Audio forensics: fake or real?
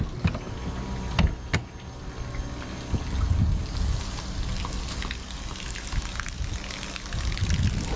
real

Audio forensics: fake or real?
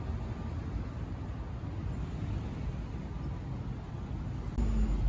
real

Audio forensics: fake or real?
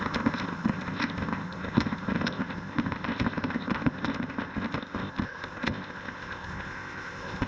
fake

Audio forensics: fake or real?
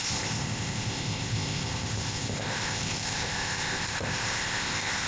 fake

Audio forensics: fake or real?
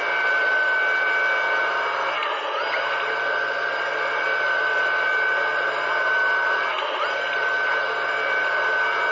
real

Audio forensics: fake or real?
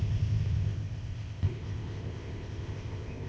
fake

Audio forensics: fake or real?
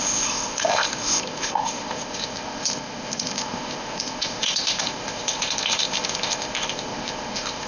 fake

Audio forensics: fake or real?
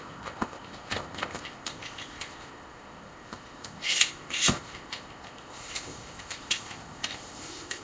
fake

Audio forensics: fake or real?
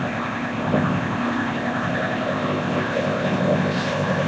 fake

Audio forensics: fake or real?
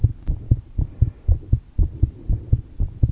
real